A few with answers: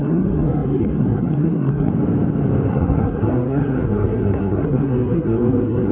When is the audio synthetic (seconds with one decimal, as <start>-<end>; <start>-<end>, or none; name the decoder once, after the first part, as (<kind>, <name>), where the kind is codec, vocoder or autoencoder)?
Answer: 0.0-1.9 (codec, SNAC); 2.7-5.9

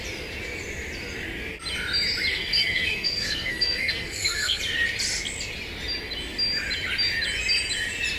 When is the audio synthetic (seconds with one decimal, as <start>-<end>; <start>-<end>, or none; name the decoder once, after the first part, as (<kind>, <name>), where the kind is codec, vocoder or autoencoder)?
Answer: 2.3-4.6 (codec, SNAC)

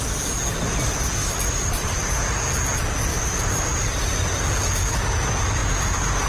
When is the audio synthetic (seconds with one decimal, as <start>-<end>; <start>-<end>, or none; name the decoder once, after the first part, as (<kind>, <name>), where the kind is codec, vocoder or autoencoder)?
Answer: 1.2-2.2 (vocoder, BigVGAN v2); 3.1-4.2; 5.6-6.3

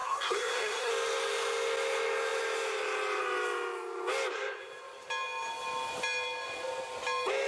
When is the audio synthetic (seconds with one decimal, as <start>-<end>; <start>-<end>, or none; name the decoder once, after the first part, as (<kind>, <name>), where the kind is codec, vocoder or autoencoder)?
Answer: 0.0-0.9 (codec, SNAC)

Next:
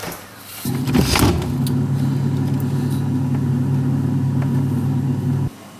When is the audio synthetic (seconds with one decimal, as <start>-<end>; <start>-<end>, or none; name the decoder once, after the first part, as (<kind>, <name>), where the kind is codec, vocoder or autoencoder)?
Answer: 0.0-1.1 (vocoder, BigVGAN v2)

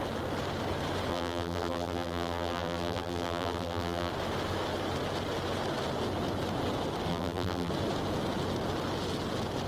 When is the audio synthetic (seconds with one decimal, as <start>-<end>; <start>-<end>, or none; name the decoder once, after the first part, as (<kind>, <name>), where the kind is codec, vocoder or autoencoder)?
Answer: 1.1-4.1 (vocoder, BigVGAN v2); 7.1-7.7